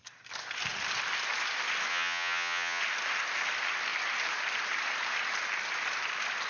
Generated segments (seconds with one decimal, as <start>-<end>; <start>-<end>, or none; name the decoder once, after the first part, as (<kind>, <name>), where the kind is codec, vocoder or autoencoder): 1.9-2.8 (vocoder, HiFi-GAN)